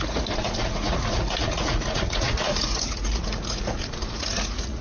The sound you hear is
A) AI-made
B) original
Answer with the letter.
A